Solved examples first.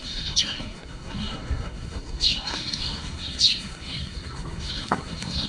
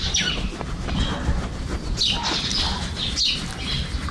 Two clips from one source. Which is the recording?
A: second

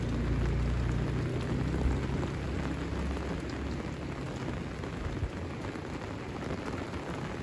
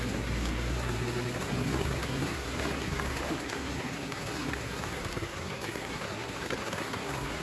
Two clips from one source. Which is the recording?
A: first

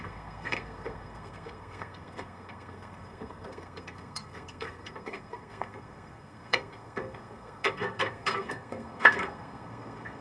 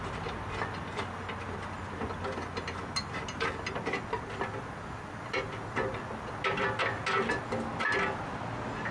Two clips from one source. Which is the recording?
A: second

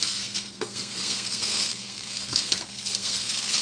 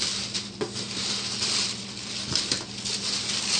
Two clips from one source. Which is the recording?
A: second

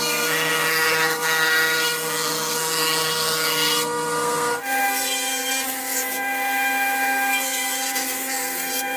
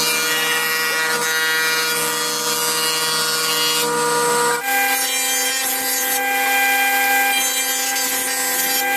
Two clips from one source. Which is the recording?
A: second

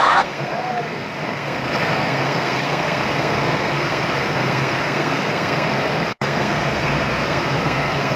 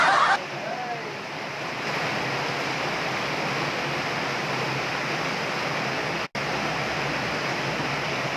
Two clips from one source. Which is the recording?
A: second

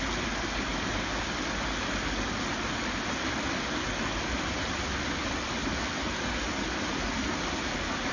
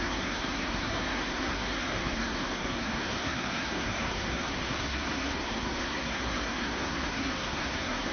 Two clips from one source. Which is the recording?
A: first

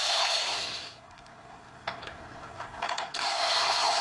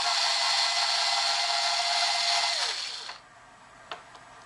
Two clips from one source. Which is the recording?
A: second